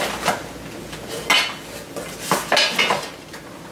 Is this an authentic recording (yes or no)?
yes